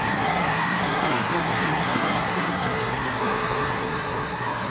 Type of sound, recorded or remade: remade